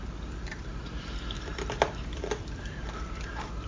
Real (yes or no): no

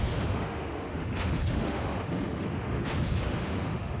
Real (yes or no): no